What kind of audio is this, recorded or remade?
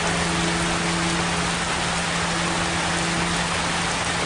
recorded